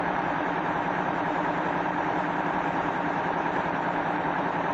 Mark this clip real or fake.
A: fake